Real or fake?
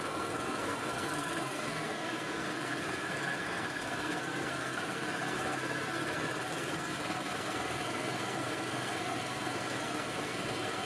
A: fake